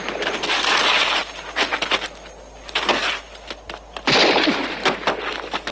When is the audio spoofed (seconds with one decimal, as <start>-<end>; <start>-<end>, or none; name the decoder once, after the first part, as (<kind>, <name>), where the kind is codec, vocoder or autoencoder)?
none